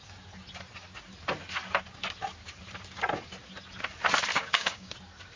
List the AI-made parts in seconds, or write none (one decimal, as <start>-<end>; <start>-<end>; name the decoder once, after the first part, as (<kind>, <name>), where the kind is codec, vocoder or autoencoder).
4.3-4.9 (codec, DAC)